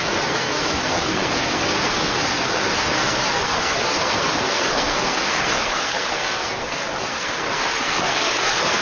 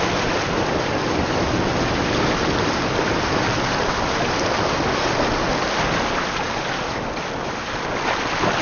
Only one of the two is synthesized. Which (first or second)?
first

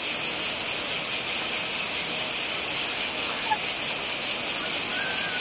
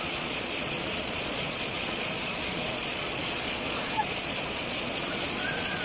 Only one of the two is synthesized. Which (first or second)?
second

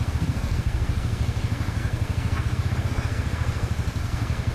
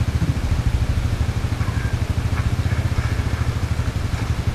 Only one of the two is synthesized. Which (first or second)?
first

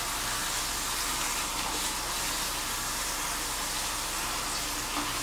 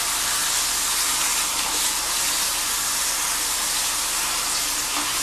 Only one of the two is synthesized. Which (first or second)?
second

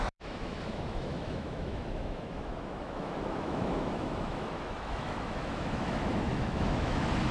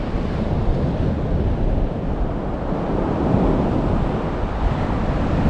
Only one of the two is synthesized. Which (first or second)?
first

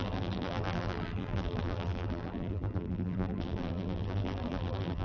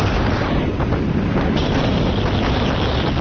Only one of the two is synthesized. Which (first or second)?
first